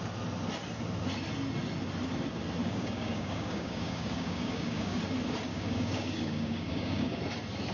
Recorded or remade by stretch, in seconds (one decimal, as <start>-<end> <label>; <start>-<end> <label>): 0.0-2.6 recorded; 2.6-5.0 remade; 5.0-5.5 recorded; 5.5-7.2 remade; 7.2-7.7 recorded

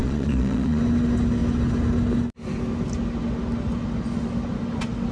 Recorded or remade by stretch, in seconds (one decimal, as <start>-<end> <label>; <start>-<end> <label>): 0.0-0.8 remade; 0.8-5.1 recorded

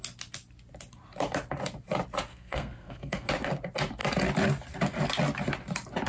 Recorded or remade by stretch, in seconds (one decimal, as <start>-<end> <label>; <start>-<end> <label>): 0.0-2.3 recorded; 2.3-3.3 remade; 3.3-6.1 recorded